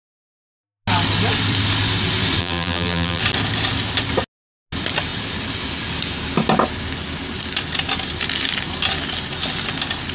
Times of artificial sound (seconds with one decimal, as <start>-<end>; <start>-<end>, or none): 2.4-3.2